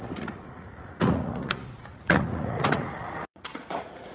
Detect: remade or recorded remade